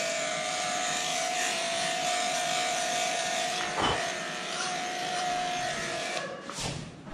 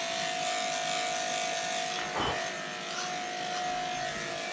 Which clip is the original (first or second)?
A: second